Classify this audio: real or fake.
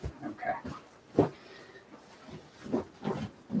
real